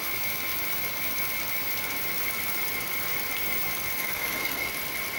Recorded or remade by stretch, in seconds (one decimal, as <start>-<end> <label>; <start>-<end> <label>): 0.0-4.0 recorded; 4.0-4.7 remade; 4.7-5.2 recorded